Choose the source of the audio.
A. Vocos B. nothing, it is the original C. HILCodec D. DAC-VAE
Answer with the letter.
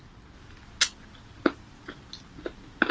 B